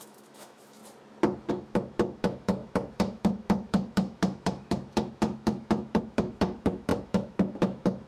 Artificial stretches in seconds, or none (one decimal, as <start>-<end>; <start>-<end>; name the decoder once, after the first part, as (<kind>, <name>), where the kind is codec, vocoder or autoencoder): 0.0-0.8 (autoencoder, DAC-VAE); 1.5-8.1